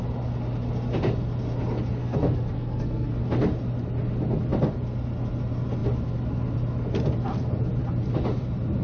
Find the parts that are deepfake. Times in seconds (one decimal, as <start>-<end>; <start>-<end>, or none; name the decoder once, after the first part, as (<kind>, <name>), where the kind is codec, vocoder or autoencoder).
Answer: 2.0-3.1 (codec, SNAC)